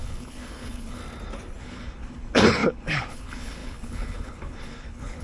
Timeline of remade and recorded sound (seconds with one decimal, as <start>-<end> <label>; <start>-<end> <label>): 0.0-1.0 remade; 1.0-1.6 recorded; 1.6-5.2 remade